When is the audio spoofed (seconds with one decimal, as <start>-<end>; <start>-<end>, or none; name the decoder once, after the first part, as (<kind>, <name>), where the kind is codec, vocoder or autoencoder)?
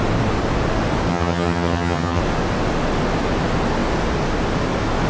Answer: 1.1-2.2 (vocoder, HiFi-GAN)